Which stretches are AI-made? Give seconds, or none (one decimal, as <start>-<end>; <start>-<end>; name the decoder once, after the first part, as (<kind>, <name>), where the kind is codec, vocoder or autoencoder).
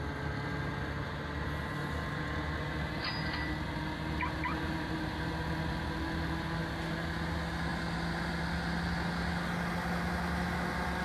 4.5-5.3 (vocoder, BigVGAN v2)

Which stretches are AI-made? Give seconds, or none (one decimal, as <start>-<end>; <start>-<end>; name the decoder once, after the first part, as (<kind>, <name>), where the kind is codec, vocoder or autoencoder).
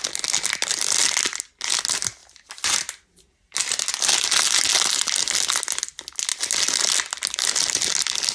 none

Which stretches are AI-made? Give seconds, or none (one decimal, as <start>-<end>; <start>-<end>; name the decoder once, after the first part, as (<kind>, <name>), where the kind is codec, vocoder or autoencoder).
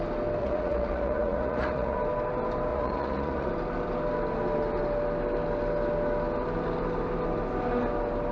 0.4-2.0 (vocoder, Vocos); 2.7-3.5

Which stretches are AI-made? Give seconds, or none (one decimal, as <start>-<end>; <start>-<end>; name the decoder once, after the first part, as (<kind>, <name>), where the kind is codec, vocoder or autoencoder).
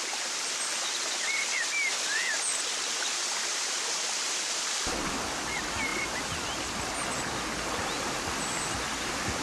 none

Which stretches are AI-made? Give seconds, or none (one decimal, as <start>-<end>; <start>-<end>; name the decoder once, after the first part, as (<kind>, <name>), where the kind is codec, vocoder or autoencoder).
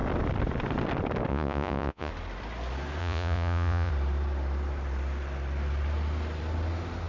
1.3-2.1 (vocoder, Vocos); 3.0-3.9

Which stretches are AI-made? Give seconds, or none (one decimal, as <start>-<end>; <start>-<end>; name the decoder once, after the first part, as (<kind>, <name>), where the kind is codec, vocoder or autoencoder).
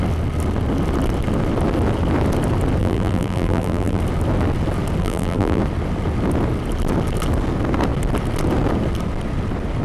2.8-4.0 (vocoder, BigVGAN v2); 5.0-5.6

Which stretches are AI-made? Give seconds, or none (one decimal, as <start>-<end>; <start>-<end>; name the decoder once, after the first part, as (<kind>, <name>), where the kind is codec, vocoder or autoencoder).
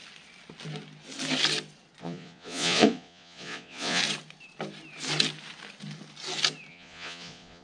2.0-4.0 (vocoder, Vocos); 6.7-7.6